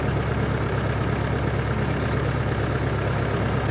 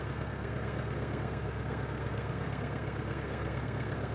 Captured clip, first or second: first